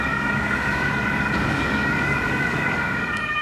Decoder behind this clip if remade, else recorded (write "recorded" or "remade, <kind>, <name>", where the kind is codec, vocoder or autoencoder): remade, codec, DAC